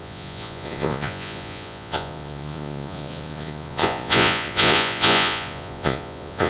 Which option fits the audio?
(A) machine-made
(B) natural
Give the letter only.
A